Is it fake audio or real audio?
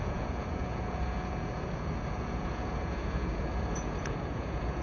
fake